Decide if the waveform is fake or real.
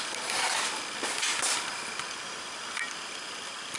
real